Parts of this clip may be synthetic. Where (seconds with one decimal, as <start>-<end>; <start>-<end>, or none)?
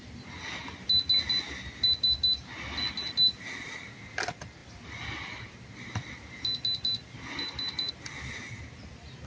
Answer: none